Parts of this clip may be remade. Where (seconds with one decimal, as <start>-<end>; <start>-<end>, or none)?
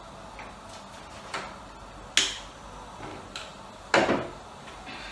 none